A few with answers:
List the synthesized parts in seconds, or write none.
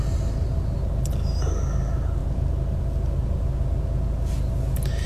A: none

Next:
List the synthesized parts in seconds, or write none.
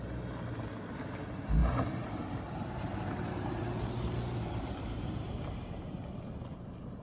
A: 1.6-5.5 (vocoder, BigVGAN v2)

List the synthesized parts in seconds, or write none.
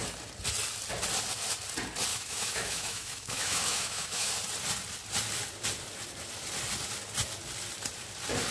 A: 2.1-4.3 (autoencoder, DAC-VAE)